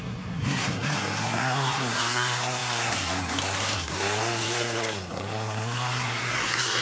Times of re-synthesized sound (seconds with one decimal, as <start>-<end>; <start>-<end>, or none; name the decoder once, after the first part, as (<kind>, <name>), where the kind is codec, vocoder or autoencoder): 0.0-6.8 (codec, SNAC)